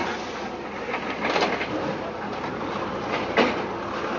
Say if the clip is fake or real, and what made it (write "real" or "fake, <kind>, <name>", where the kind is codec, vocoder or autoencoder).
real